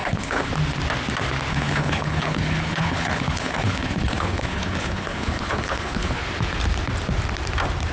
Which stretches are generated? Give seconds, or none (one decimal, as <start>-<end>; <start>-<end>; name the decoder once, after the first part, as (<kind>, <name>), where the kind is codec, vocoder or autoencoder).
0.0-0.5 (codec, HILCodec); 1.5-6.2